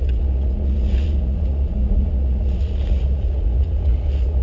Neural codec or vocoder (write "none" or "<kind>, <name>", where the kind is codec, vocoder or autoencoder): vocoder, Vocos